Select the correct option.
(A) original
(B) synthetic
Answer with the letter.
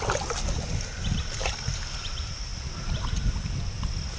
A